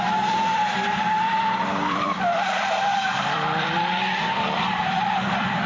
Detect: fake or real fake